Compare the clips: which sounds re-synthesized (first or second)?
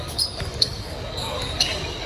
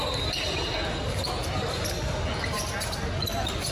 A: first